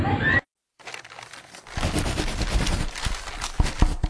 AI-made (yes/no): no